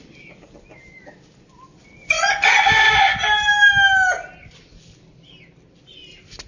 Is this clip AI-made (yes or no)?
no